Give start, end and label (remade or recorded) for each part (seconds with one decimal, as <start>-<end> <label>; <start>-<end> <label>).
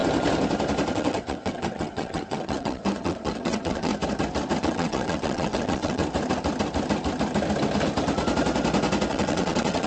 0.0-0.9 recorded; 0.9-3.9 remade; 3.9-4.6 recorded; 4.6-6.0 remade; 6.0-9.1 recorded; 9.1-9.9 remade